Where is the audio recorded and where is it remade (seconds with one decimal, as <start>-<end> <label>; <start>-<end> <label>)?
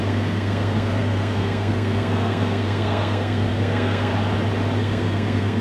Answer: 0.0-4.1 remade; 4.1-4.8 recorded; 4.8-5.6 remade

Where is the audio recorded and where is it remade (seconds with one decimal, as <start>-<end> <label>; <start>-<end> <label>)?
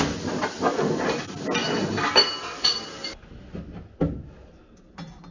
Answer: 0.0-5.3 recorded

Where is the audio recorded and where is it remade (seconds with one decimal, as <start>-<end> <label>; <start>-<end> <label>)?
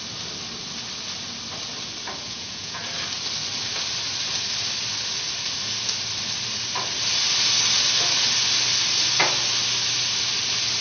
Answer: 0.0-2.2 recorded; 2.2-2.8 remade; 2.8-10.8 recorded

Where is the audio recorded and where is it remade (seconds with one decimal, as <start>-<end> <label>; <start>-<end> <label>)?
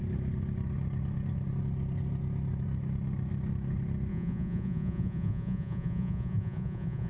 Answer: 0.0-4.1 recorded; 4.1-7.1 remade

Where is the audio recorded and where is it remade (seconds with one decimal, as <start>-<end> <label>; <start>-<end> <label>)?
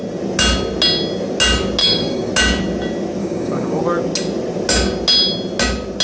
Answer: 0.0-1.8 recorded; 1.8-2.3 remade; 2.3-3.2 recorded; 3.2-3.8 remade; 3.8-6.0 recorded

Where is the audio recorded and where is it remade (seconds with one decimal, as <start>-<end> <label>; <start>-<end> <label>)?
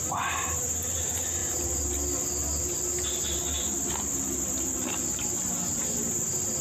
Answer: 0.0-6.6 recorded